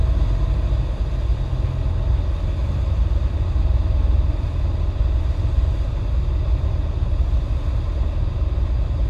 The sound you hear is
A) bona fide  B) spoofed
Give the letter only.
A